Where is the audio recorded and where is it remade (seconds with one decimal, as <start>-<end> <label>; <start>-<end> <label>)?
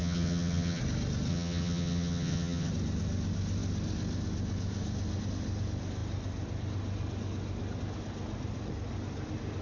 0.0-0.8 remade; 0.8-1.3 recorded; 1.3-2.7 remade; 2.7-9.6 recorded